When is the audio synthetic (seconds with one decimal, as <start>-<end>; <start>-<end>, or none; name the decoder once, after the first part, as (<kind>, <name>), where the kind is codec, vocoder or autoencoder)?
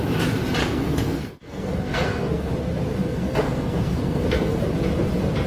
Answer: 0.6-2.5 (codec, SNAC); 3.0-4.6